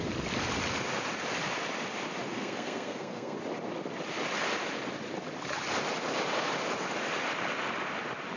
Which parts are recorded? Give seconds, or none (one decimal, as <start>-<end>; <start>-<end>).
0.0-2.3; 3.4-8.4

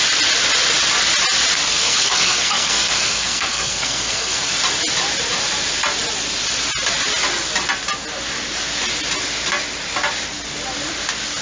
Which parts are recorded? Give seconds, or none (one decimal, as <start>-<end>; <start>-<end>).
0.0-1.7; 4.5-11.4

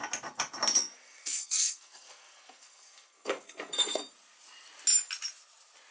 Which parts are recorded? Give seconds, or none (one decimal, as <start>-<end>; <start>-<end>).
0.0-0.8; 4.0-5.9